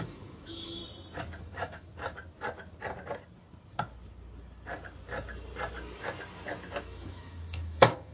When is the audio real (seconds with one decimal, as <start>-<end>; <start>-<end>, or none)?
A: 0.8-1.4; 1.9-6.8